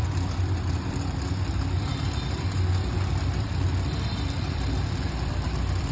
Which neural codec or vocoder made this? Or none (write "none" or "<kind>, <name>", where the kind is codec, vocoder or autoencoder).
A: vocoder, BigVGAN v2